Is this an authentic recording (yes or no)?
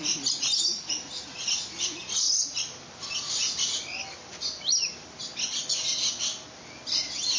yes